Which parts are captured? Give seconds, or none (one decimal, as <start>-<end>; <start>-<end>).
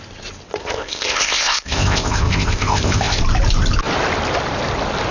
0.0-0.6; 3.2-5.1